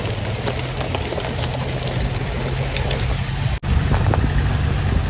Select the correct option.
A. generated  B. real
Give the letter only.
B